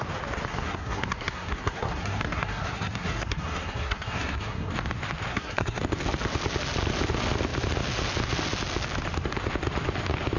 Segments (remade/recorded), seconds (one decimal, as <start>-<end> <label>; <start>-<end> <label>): 0.0-0.5 recorded; 0.5-4.7 remade; 4.7-5.3 recorded; 5.3-5.8 remade; 5.8-10.4 recorded